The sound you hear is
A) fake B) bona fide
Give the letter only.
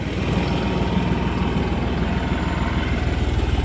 B